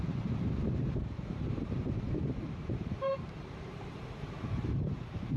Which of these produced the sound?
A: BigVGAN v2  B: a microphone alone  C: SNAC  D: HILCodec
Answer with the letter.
A